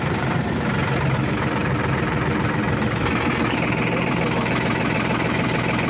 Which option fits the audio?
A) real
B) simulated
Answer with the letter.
B